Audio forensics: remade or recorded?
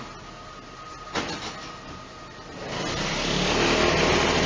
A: recorded